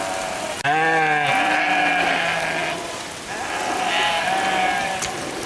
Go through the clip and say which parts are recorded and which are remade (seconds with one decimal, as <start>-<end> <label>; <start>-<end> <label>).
0.0-5.5 recorded